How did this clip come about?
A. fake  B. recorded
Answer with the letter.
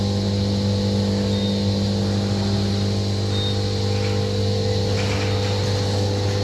B